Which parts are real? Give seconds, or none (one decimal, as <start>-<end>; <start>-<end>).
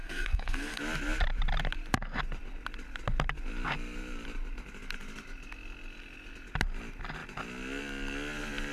0.8-8.7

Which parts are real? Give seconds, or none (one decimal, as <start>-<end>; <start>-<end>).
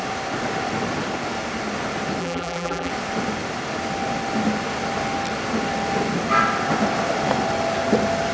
0.0-2.2; 2.9-8.3